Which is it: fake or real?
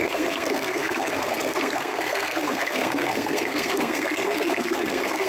fake